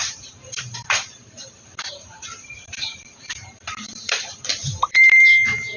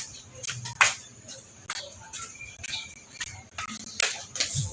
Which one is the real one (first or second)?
second